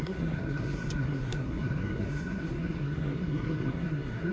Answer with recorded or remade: remade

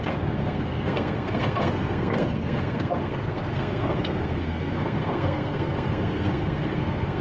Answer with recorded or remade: remade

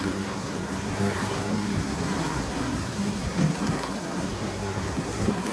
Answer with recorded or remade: remade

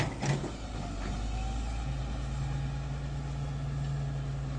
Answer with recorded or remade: recorded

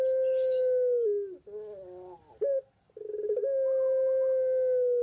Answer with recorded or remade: recorded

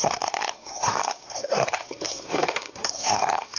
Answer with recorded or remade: remade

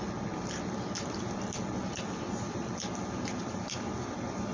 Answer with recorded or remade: recorded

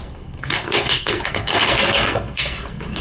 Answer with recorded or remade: remade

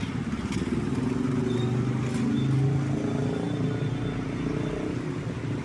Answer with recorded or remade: recorded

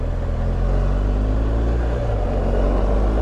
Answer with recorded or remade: recorded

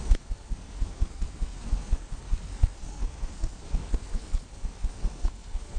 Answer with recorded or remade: remade